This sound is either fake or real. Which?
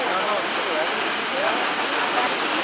real